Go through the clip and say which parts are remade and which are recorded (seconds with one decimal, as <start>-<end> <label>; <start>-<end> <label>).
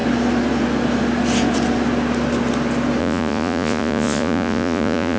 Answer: 0.0-3.0 recorded; 3.0-5.2 remade